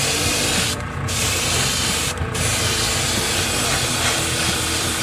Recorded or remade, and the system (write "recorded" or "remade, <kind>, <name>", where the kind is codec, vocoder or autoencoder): remade, vocoder, BigVGAN v2